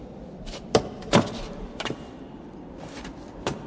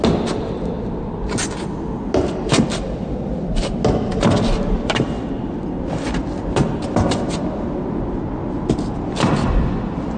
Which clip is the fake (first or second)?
first